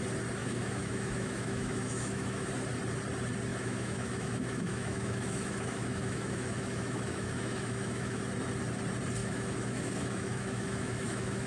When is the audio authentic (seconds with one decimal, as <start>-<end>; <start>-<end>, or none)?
0.0-0.4; 2.5-3.5; 8.2-9.2

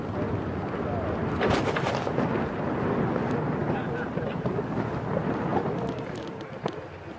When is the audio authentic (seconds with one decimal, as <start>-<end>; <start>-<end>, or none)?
0.0-7.2

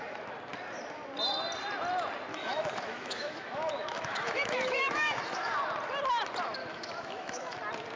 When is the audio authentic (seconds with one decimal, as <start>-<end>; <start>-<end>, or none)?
0.0-2.3; 5.5-6.7; 7.6-8.0